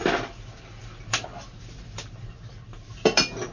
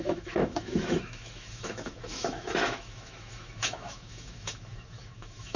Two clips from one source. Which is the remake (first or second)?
second